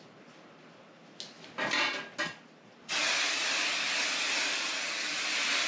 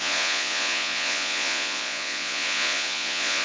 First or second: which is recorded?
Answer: first